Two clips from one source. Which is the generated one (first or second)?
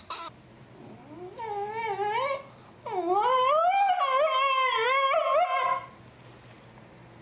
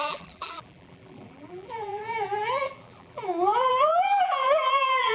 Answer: second